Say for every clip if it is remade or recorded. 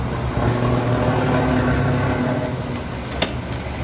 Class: recorded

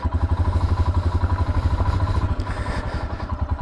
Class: recorded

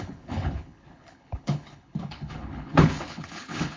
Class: remade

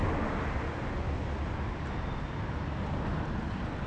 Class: recorded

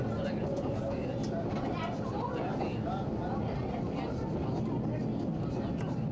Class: recorded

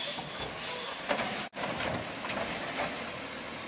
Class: recorded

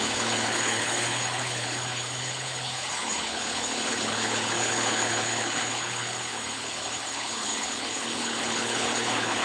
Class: remade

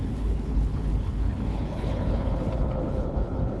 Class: remade